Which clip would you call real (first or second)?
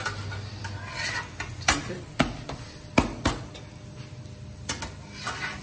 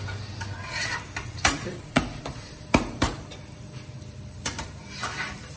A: first